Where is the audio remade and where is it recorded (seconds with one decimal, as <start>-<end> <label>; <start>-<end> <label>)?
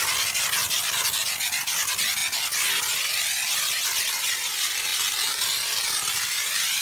0.0-6.8 recorded